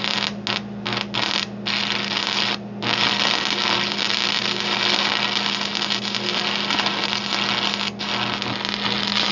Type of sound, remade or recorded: recorded